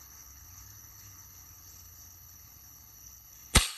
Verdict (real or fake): fake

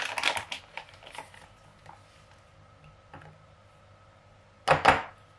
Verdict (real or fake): real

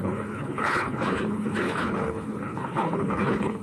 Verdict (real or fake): fake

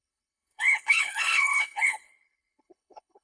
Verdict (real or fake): fake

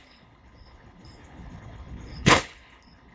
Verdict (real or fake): fake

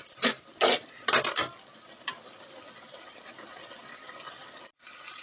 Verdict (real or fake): real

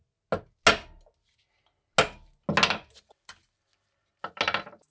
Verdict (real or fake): real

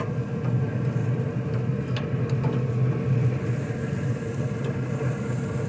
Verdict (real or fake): real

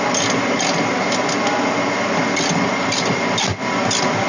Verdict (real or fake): real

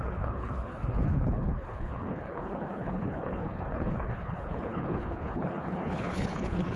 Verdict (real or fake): fake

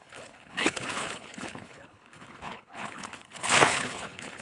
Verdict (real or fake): fake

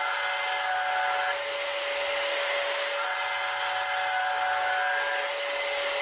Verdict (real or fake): real